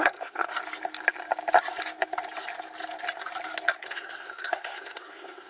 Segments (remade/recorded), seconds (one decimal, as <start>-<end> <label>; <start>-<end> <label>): 0.0-0.5 remade; 0.5-3.8 recorded; 3.8-5.5 remade